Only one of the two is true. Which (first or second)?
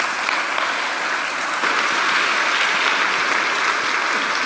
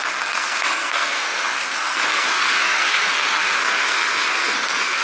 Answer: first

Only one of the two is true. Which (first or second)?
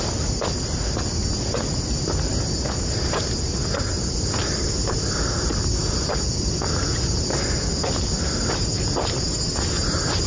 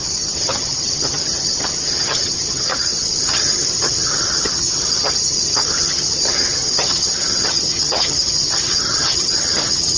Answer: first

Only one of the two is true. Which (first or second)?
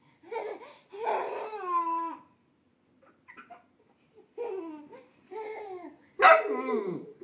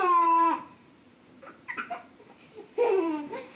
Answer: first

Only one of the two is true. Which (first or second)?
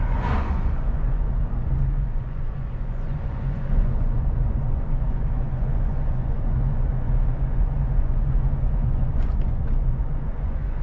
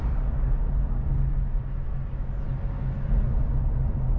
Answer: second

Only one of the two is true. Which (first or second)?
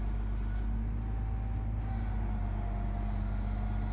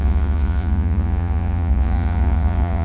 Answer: first